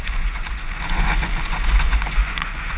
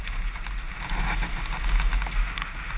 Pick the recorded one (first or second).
second